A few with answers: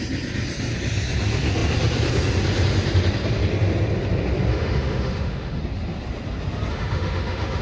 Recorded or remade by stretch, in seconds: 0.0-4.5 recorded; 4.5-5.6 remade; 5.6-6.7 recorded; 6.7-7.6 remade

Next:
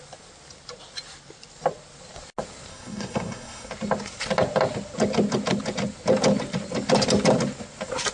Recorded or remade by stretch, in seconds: 0.0-2.7 recorded; 2.7-3.7 remade; 3.7-8.1 recorded

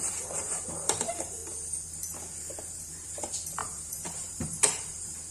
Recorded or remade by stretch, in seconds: 0.0-1.4 remade; 1.4-2.9 recorded; 2.9-5.3 remade